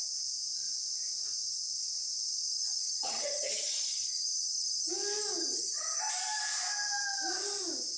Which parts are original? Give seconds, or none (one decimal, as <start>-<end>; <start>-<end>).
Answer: 0.0-2.5; 4.9-5.4; 6.1-8.0